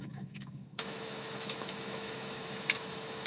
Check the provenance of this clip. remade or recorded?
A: remade